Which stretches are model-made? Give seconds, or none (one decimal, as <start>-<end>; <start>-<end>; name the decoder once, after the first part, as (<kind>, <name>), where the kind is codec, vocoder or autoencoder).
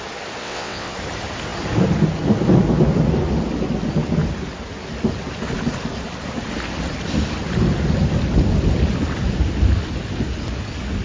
0.4-0.9 (vocoder, WaveNeXt)